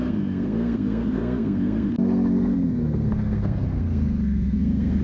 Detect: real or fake fake